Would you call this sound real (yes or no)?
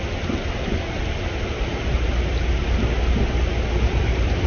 yes